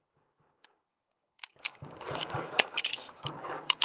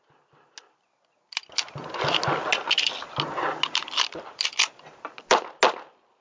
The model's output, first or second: first